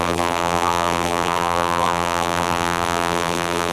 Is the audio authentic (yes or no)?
no